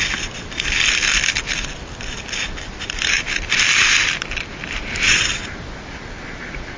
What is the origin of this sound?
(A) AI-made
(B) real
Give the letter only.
B